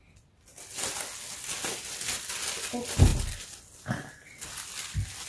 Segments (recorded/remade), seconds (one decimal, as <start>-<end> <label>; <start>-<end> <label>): 0.0-5.3 recorded

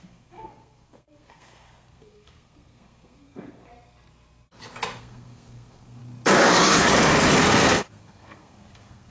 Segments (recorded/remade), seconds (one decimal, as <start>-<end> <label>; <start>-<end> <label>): 0.0-3.7 remade; 3.7-5.0 recorded; 5.0-6.0 remade; 6.0-7.5 recorded; 7.5-9.1 remade